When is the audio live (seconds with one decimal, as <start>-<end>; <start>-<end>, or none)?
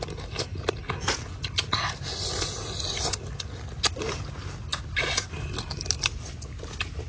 0.0-7.1